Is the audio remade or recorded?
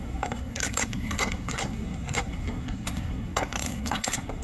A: remade